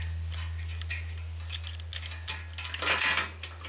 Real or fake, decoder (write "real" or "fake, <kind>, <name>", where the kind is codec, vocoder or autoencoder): real